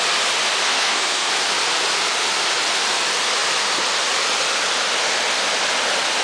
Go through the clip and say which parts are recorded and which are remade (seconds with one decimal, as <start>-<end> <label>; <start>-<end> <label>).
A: 0.0-0.6 recorded; 0.6-1.3 remade; 1.3-6.2 recorded